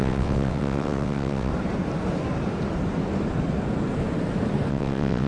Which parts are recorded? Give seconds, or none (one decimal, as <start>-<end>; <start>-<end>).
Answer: 1.5-4.7